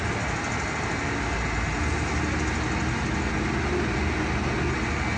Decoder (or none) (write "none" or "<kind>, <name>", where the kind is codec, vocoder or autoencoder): none